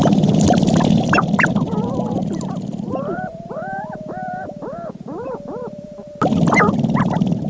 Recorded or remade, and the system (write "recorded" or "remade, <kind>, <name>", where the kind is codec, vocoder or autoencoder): remade, vocoder, BigVGAN v2